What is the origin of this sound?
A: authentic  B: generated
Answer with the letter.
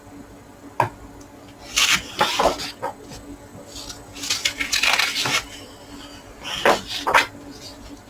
A